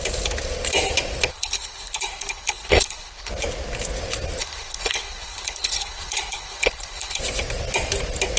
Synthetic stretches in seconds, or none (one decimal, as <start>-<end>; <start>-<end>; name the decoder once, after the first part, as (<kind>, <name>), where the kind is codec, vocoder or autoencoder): 1.3-3.3 (codec, HILCodec); 4.4-7.2